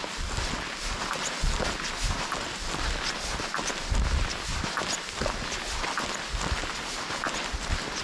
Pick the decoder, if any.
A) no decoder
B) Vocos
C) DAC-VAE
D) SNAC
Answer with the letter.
A